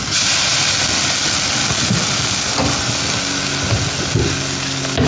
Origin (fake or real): real